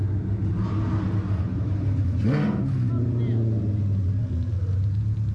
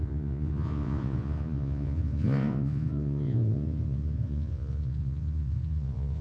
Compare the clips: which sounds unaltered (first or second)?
first